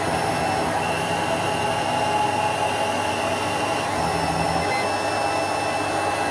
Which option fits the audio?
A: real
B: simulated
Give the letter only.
A